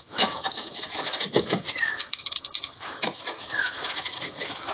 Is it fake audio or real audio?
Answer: fake